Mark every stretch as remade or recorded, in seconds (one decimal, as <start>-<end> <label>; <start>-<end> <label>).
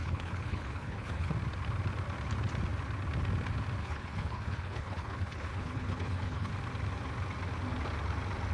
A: 0.0-1.3 remade; 1.3-3.8 recorded; 3.8-6.5 remade; 6.5-8.5 recorded